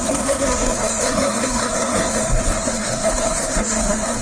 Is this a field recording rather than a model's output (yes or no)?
no